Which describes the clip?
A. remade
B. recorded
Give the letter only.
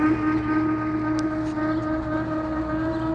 B